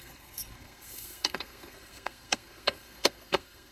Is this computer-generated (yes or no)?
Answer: yes